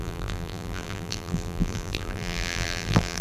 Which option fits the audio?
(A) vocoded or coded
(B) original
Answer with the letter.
A